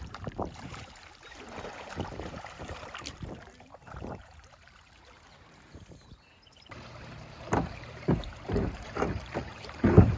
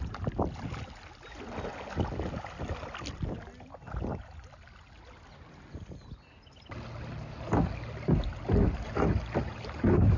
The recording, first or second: second